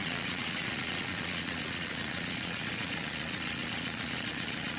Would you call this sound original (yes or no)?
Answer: no